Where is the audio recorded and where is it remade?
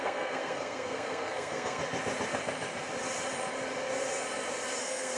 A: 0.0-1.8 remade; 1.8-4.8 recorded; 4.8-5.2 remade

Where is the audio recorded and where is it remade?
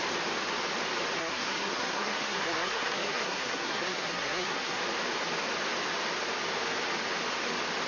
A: 0.0-1.2 recorded; 1.2-4.8 remade; 4.8-7.9 recorded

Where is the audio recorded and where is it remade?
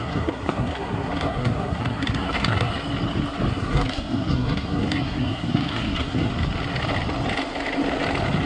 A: 0.0-2.7 remade; 2.7-3.5 recorded; 3.5-6.3 remade; 6.3-8.5 recorded